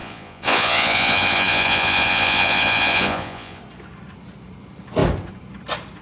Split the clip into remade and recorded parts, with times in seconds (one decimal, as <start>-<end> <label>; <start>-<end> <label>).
0.0-3.6 remade; 3.6-6.0 recorded